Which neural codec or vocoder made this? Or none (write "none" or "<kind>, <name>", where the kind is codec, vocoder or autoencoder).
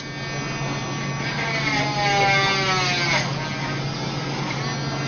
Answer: none